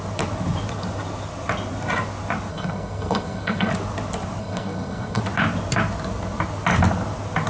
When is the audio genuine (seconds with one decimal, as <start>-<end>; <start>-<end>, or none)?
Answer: 0.0-2.5; 3.7-4.4; 5.2-7.5